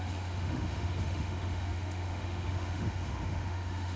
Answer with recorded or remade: remade